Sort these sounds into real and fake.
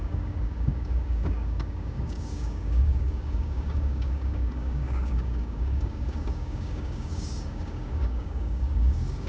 fake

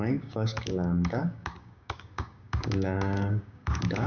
fake